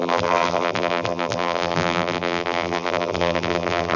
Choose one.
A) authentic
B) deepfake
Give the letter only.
B